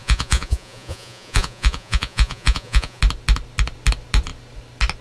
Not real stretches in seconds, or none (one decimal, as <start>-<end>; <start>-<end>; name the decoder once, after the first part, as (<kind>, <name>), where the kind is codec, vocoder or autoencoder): 0.0-3.0 (vocoder, Vocos)